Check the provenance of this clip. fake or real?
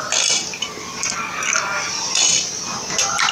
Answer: real